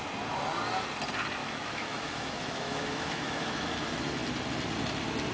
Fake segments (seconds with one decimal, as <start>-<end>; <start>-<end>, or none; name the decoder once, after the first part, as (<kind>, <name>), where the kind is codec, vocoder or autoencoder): 1.4-3.7 (autoencoder, DAC-VAE)